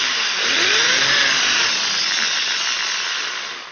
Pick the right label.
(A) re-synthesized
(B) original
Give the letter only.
B